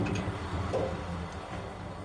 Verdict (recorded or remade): recorded